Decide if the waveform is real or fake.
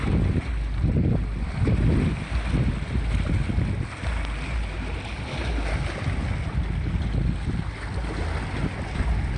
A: real